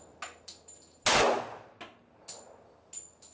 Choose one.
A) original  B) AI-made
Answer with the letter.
A